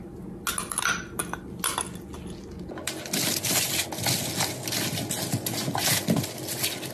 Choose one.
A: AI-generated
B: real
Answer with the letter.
B